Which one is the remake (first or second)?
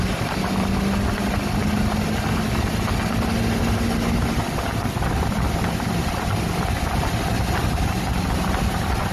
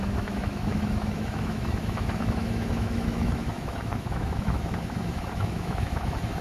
second